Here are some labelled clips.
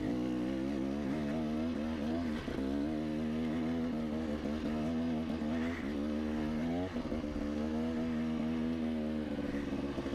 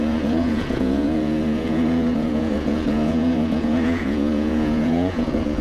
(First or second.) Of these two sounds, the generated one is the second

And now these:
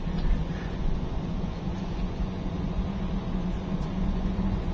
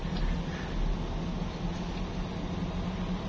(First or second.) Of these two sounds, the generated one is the first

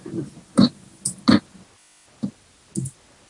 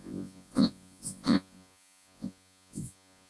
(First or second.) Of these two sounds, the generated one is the second